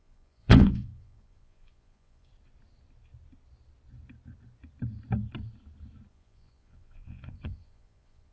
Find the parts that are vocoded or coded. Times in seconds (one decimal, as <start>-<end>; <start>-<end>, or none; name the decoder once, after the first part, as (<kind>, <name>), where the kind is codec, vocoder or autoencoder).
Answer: 0.0-2.3 (vocoder, Vocos); 6.1-8.3